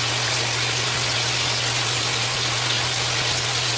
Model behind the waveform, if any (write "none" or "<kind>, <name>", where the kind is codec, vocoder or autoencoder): none